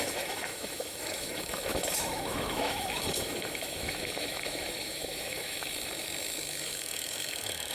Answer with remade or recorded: remade